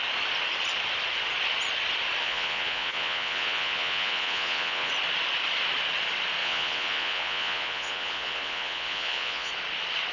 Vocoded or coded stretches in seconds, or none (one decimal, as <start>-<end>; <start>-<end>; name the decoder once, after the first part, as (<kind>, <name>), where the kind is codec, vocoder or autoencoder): 2.2-4.9 (vocoder, Vocos); 6.4-9.5